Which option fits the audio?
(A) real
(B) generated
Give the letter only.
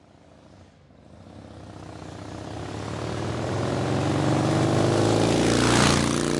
A